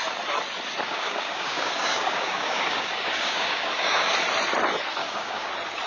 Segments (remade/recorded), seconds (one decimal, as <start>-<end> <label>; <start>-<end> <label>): 0.0-0.9 recorded; 0.9-4.1 remade; 4.1-5.0 recorded; 5.0-5.5 remade; 5.5-5.9 recorded

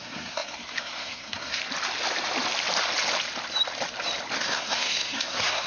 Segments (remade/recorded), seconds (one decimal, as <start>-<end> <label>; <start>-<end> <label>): 0.0-1.6 remade; 1.6-4.4 recorded; 4.4-5.7 remade